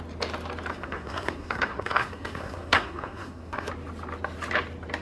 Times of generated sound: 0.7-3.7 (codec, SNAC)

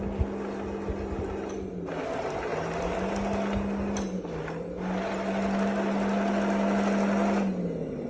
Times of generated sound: none

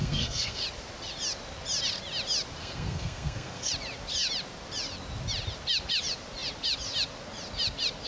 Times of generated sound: 0.0-0.6 (codec, SNAC); 2.6-3.7

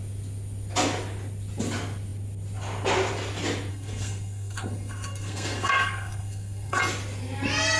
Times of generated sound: 3.7-6.8 (codec, SNAC)

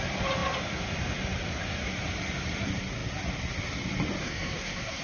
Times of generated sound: 4.2-5.0 (codec, SNAC)

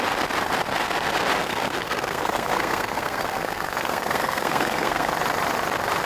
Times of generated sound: 1.4-5.1 (codec, SNAC)

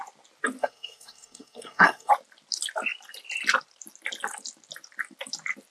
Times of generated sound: 0.6-2.1 (codec, SNAC)

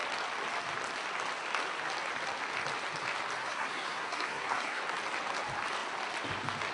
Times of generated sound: 3.4-4.8 (codec, SNAC)